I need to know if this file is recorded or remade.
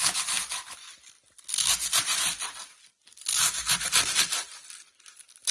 recorded